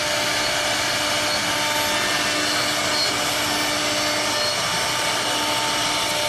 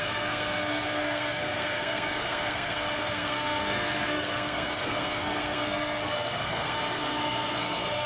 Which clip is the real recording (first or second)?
first